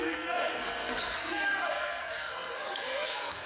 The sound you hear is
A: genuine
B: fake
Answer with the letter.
B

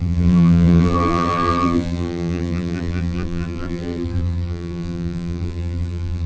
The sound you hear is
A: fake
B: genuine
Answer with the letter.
A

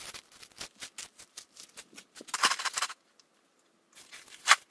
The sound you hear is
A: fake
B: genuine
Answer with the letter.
B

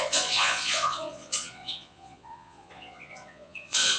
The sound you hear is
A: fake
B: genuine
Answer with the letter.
A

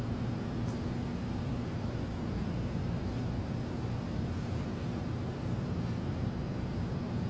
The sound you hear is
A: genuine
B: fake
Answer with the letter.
A